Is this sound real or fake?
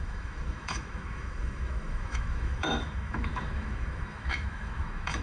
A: fake